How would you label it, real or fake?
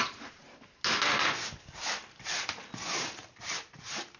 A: real